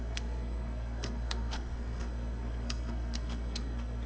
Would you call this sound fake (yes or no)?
yes